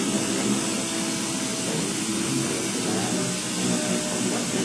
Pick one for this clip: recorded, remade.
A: recorded